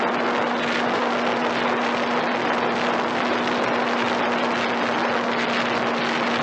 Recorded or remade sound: recorded